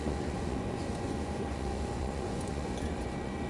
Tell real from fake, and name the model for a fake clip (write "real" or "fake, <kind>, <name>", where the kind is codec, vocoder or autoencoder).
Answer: fake, vocoder, Vocos